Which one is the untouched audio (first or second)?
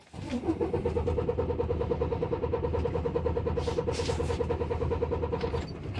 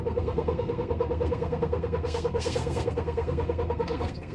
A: first